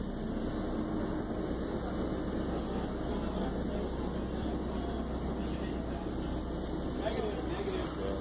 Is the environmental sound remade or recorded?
recorded